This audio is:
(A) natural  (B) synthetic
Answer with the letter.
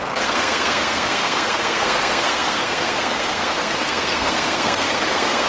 B